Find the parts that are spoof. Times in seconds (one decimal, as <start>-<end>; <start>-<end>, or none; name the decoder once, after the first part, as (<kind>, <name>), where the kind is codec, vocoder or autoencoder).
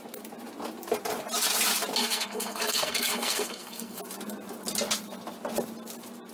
2.0-4.0 (codec, SNAC)